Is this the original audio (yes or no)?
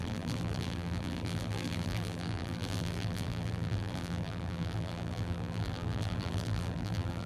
no